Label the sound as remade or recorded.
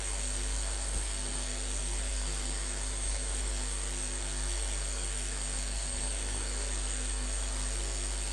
remade